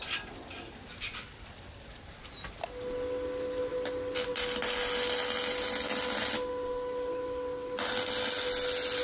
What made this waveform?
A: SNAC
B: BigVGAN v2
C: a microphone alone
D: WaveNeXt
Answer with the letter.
C